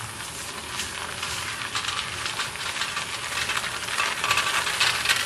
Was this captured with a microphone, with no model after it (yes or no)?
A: yes